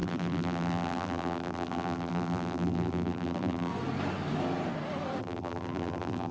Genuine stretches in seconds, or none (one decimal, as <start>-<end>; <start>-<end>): 3.7-5.2